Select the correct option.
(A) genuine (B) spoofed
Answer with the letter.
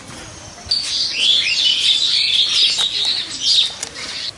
A